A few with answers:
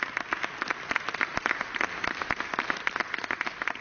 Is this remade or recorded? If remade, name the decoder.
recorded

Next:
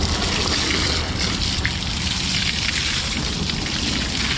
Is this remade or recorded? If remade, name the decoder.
recorded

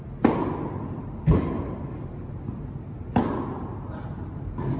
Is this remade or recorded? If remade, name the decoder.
recorded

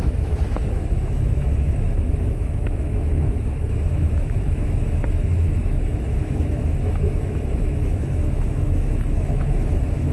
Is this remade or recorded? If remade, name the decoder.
remade, autoencoder, DAC-VAE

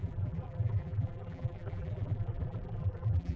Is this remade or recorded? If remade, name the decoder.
remade, vocoder, BigVGAN v2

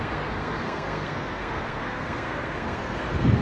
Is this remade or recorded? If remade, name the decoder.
remade, codec, SNAC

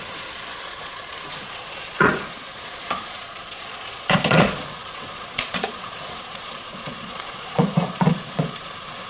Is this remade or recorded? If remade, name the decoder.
remade, vocoder, Vocos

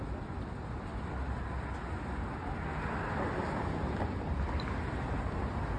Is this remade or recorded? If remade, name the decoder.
recorded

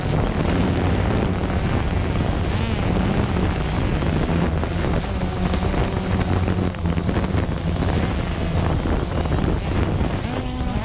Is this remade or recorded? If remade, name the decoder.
recorded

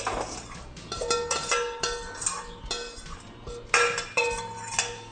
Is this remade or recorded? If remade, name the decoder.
recorded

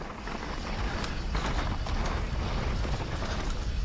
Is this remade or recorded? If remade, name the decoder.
recorded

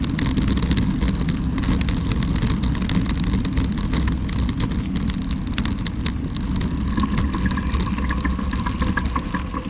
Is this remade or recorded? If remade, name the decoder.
recorded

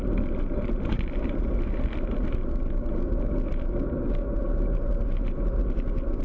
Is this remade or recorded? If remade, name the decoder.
recorded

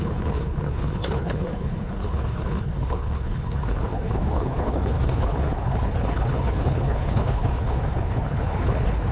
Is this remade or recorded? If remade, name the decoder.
remade, codec, HILCodec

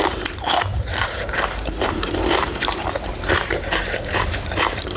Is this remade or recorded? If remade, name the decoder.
remade, vocoder, BigVGAN v2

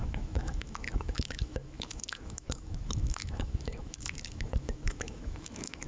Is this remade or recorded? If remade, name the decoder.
remade, autoencoder, DAC-VAE